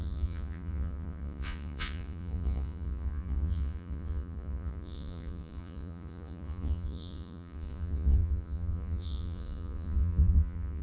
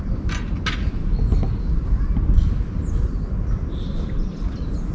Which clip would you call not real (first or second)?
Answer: first